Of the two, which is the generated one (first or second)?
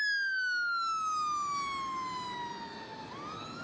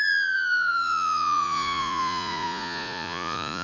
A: second